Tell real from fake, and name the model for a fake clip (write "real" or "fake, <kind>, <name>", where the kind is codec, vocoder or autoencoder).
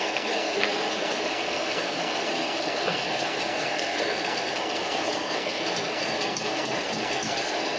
fake, codec, SNAC